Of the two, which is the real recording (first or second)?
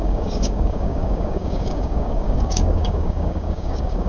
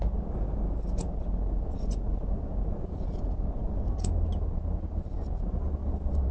second